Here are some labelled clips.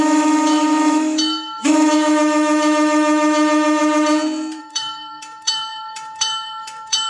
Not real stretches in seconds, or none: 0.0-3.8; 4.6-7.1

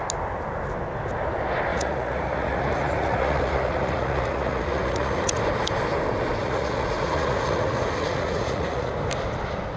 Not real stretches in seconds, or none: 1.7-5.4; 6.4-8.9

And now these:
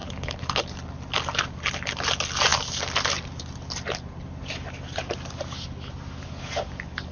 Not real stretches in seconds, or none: 0.0-0.6

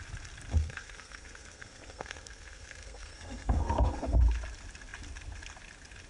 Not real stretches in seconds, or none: 0.5-4.2

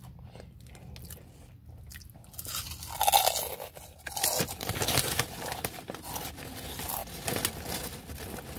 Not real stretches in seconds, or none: none